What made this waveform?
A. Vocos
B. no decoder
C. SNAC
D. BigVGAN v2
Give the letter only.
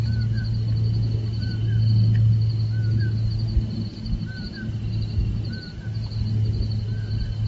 B